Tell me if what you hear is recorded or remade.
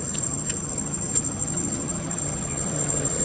remade